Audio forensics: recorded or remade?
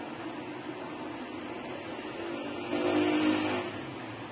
recorded